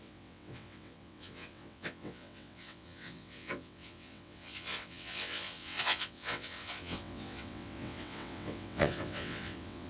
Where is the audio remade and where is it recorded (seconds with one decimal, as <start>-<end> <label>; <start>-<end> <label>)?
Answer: 0.0-9.9 remade